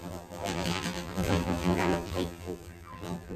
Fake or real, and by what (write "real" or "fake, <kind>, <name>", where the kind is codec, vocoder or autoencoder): fake, vocoder, BigVGAN v2